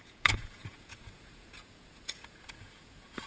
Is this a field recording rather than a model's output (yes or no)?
no